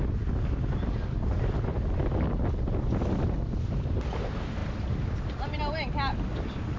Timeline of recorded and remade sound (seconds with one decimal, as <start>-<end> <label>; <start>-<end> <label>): 0.0-6.8 recorded